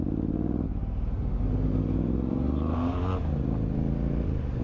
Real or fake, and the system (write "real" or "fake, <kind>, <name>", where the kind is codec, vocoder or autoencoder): real